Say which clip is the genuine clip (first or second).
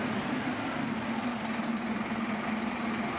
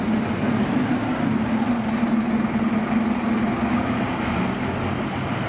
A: second